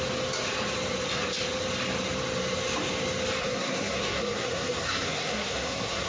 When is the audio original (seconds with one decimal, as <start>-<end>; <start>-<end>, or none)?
0.0-3.4